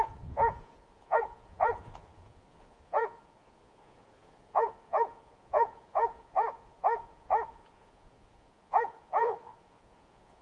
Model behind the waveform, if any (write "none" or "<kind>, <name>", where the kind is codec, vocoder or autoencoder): vocoder, Vocos